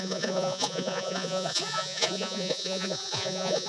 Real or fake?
fake